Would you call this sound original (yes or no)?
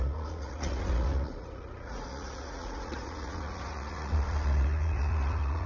no